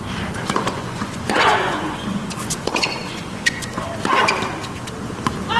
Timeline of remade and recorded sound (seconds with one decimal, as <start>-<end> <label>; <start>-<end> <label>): 0.0-0.4 recorded; 0.4-3.8 remade; 3.8-5.6 recorded

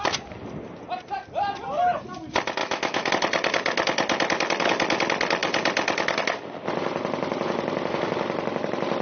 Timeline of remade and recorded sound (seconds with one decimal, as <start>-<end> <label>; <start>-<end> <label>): 0.0-2.6 recorded; 2.6-3.1 remade; 3.1-9.0 recorded

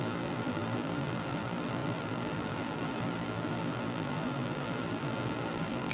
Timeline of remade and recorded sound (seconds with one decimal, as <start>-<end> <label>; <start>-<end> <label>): 0.0-5.9 remade

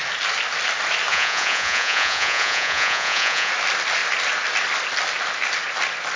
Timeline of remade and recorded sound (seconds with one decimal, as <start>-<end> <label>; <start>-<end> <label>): 0.0-1.1 recorded; 1.1-3.5 remade; 3.5-6.2 recorded

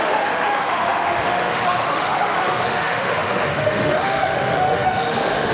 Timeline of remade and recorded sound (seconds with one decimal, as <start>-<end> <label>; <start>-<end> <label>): 0.0-5.5 remade